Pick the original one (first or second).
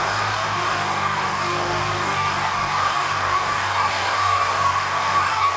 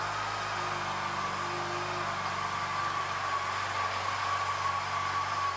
second